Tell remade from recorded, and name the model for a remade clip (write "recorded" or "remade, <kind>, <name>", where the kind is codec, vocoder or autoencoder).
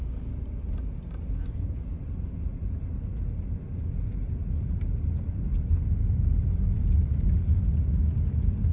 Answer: recorded